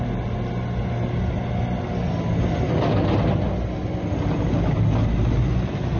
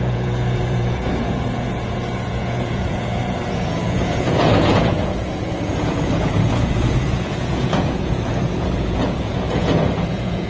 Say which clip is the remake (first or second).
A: second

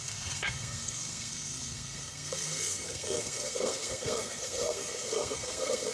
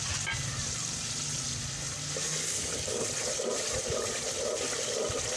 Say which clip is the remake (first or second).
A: first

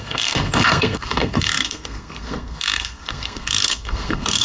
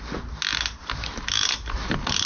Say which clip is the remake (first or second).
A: first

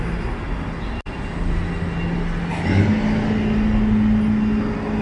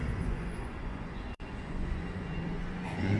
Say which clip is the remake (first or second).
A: second